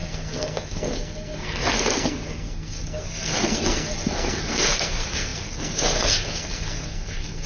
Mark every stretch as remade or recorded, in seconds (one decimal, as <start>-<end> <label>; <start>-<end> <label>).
0.0-7.5 remade